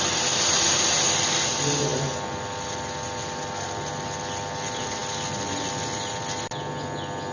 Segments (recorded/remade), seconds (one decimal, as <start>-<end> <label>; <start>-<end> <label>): 0.0-7.3 recorded